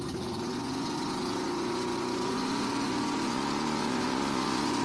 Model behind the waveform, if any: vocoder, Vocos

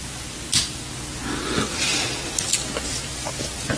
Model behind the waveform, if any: none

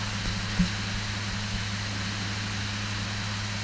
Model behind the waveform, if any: none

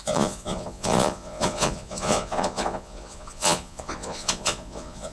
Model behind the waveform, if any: vocoder, Vocos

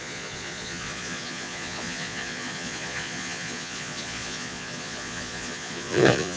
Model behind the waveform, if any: vocoder, Vocos